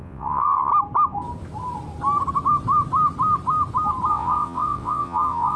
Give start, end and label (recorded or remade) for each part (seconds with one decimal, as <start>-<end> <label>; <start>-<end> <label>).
0.0-0.7 remade; 0.7-4.1 recorded; 4.1-5.6 remade